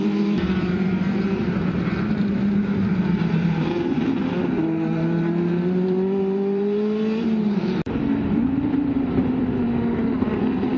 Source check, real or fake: fake